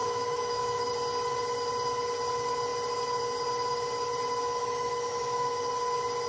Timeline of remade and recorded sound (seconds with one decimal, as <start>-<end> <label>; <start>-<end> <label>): 0.0-0.9 remade; 0.9-4.4 recorded; 4.4-5.7 remade; 5.7-6.3 recorded